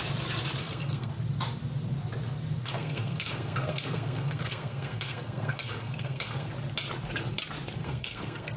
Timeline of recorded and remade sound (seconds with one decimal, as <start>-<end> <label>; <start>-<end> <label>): 0.0-0.6 recorded; 0.6-1.1 remade; 1.1-2.6 recorded; 2.6-6.5 remade; 6.5-7.8 recorded; 7.8-8.6 remade